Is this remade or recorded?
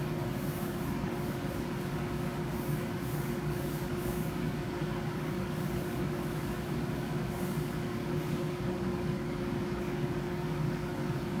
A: remade